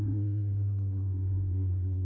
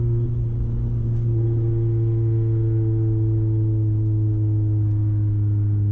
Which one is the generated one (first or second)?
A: first